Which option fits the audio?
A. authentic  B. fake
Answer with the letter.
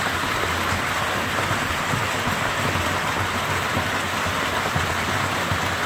A